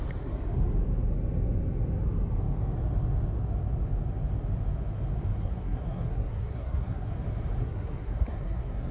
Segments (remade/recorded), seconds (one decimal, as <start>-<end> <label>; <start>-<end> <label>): 0.0-5.4 recorded; 5.4-7.1 remade; 7.1-7.6 recorded; 7.6-8.9 remade